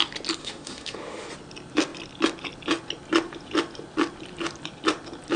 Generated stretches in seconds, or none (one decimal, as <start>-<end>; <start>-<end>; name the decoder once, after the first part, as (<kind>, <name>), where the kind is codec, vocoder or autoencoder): 0.4-1.3 (autoencoder, DAC-VAE)